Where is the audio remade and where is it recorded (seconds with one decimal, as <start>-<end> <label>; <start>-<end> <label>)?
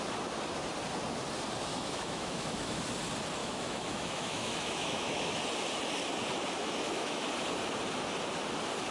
0.0-1.7 recorded; 1.7-2.8 remade; 2.8-3.4 recorded; 3.4-5.4 remade; 5.4-6.6 recorded; 6.6-7.3 remade; 7.3-8.9 recorded